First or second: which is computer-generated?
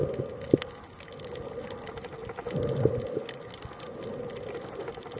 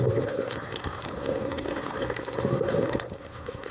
second